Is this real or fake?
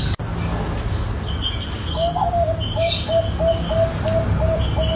real